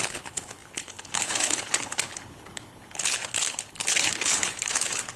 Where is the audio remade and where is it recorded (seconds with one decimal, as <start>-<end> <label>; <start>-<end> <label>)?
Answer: 0.0-5.2 remade